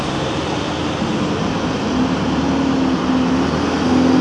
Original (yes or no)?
yes